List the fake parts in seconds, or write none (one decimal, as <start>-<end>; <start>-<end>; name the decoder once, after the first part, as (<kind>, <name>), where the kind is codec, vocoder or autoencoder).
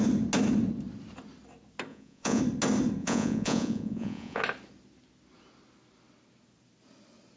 1.9-2.4 (vocoder, Vocos); 3.0-4.4